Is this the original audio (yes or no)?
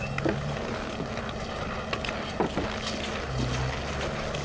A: yes